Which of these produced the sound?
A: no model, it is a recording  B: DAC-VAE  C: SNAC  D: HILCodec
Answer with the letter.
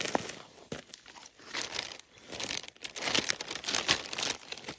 A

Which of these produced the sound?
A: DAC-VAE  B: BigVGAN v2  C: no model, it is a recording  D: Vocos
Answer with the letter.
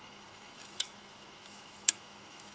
A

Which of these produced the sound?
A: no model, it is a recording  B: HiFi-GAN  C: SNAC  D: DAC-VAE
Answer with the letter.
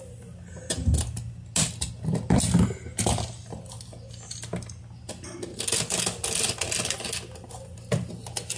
A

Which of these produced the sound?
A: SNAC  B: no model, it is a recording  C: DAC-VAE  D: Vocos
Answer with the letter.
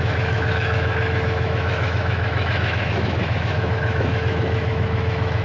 C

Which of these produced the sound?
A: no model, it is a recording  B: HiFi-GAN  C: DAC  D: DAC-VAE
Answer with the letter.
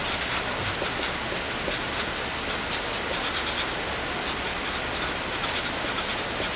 A